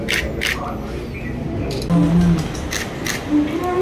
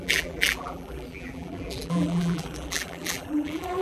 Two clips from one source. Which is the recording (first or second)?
first